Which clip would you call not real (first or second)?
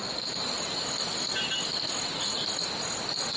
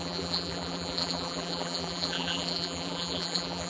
second